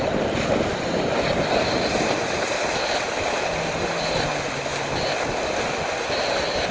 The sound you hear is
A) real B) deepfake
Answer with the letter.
A